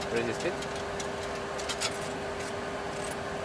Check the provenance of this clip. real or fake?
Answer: real